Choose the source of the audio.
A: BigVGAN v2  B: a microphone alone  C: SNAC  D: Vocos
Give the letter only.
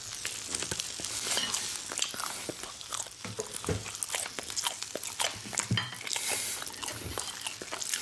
B